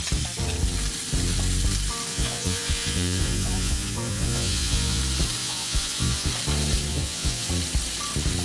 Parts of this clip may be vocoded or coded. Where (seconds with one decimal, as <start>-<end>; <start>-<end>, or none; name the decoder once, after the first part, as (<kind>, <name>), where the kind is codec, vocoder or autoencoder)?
2.1-5.0 (vocoder, Vocos); 5.4-6.3; 6.9-7.5